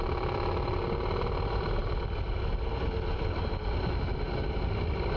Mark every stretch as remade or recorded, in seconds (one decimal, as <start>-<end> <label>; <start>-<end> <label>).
0.0-5.2 recorded